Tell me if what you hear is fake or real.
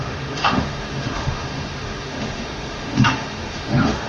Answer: fake